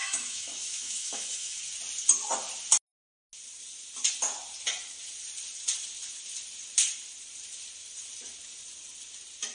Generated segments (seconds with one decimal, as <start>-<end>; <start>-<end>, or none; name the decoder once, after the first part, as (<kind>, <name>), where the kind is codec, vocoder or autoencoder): 0.0-1.6 (autoencoder, DAC-VAE)